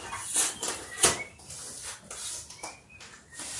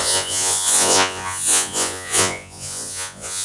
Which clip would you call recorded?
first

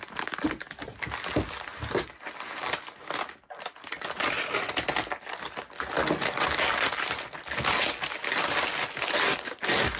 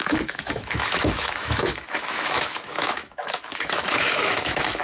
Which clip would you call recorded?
first